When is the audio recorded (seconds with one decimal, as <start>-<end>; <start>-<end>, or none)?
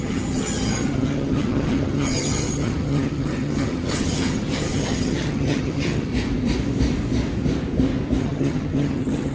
6.1-8.2